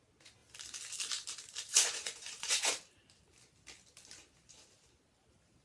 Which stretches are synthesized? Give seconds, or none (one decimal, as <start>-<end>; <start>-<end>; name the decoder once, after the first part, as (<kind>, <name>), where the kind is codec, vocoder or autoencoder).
1.7-2.7 (vocoder, Vocos)